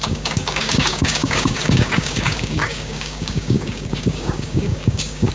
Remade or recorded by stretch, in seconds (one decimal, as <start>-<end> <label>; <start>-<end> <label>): 0.0-5.3 remade